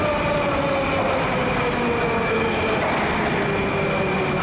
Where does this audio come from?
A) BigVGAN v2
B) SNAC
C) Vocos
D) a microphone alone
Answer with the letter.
D